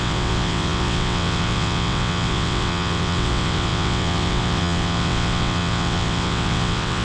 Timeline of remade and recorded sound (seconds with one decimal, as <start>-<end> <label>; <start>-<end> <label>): 0.0-7.0 remade